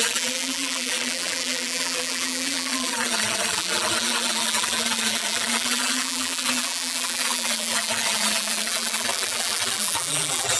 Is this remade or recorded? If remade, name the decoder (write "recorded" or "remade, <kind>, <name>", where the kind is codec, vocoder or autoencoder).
remade, vocoder, BigVGAN v2